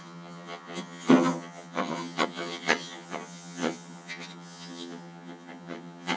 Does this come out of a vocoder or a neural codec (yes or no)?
yes